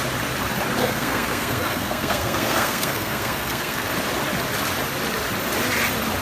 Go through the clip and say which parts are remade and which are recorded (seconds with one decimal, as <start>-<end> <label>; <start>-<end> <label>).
0.0-0.8 recorded; 0.8-3.9 remade; 3.9-6.2 recorded